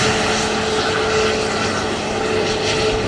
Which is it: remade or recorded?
recorded